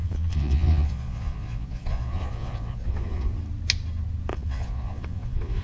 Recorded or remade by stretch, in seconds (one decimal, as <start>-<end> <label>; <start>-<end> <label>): 0.0-3.3 remade; 3.3-4.3 recorded; 4.3-5.6 remade